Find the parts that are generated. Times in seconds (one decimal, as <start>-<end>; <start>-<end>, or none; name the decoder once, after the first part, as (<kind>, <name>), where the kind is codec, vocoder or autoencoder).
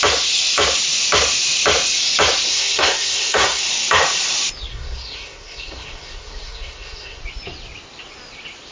2.5-3.6 (codec, SNAC); 4.7-7.2